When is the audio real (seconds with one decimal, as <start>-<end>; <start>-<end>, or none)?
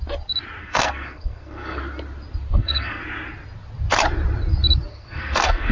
0.0-0.6; 1.8-2.5; 3.0-4.9